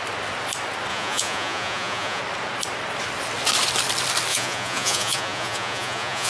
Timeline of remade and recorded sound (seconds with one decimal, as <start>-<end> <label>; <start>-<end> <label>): 0.0-0.9 recorded; 0.9-2.2 remade; 2.2-4.3 recorded; 4.3-6.3 remade